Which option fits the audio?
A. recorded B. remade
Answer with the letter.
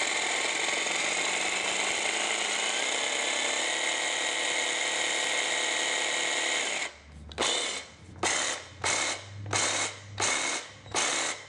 A